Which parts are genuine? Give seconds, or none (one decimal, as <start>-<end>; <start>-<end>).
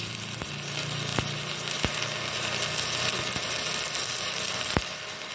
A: 1.1-4.3